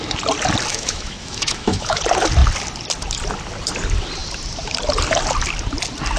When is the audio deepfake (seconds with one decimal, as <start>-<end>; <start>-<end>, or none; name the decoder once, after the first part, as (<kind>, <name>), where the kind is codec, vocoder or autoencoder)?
0.7-2.0 (autoencoder, DAC-VAE)